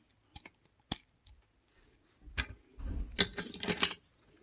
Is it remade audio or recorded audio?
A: recorded